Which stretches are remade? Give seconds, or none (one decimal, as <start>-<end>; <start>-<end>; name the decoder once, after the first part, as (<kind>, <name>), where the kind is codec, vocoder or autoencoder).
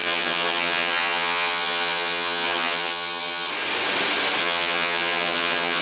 0.0-3.5 (vocoder, HiFi-GAN); 4.4-5.8